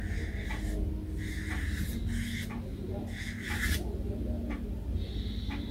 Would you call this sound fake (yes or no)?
no